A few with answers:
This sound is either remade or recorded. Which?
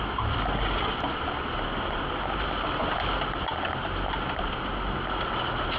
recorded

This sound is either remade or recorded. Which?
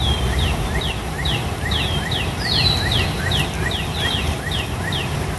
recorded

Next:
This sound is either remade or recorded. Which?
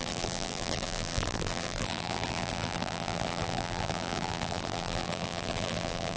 remade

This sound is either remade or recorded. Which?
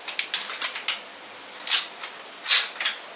recorded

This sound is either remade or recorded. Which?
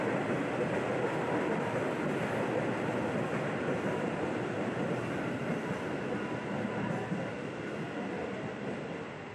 recorded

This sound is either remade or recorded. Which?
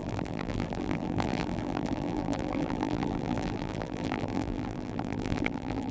remade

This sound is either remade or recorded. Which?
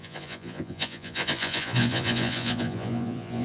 remade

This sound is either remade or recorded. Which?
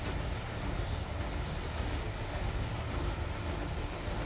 recorded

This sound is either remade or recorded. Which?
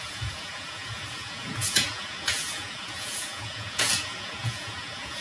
remade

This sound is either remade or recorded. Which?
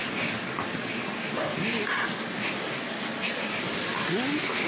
recorded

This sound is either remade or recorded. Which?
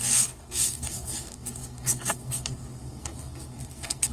remade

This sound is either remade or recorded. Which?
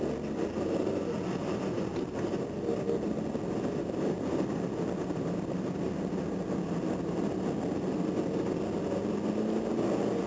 recorded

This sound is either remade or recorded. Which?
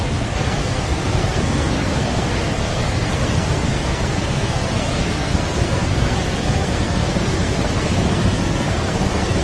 remade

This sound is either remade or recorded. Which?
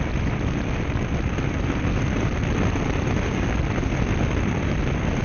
recorded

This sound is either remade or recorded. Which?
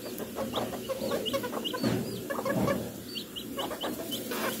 recorded